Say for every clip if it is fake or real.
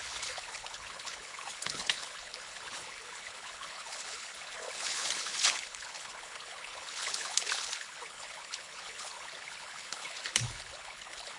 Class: fake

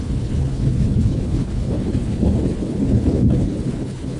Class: fake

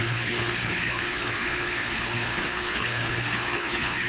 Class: fake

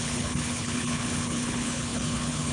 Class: fake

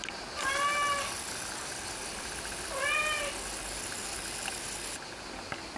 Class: real